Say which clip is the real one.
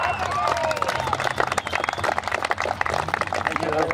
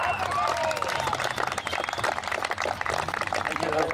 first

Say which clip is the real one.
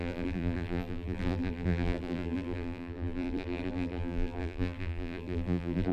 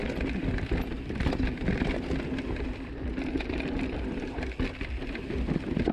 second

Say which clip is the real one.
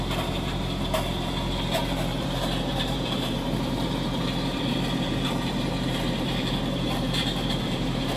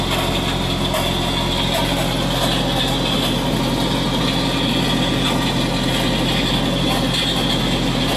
second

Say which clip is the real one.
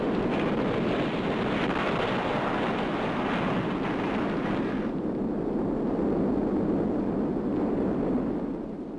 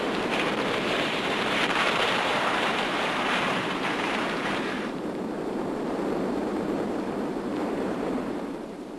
first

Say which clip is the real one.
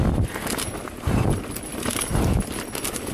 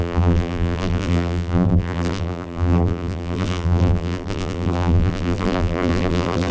first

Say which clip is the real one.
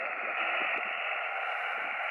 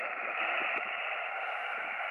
first